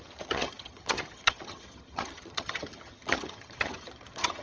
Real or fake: fake